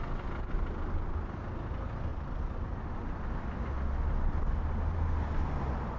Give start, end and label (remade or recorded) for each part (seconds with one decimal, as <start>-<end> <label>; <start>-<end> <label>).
0.0-6.0 recorded